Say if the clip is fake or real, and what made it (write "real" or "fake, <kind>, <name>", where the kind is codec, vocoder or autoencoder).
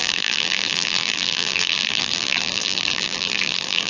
fake, vocoder, BigVGAN v2